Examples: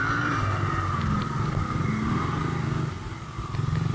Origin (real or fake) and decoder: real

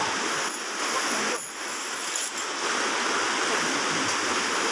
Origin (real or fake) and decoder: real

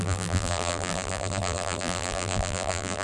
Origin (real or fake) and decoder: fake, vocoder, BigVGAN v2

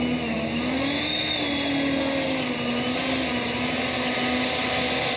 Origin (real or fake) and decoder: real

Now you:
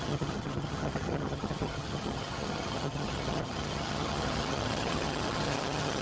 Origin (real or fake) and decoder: fake, vocoder, HiFi-GAN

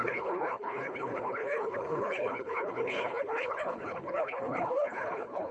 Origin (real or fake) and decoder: fake, codec, HILCodec